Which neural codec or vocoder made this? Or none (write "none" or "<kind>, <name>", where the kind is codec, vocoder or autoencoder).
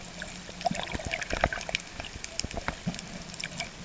none